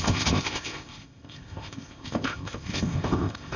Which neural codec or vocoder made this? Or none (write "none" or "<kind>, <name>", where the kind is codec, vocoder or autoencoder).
codec, ZipCodec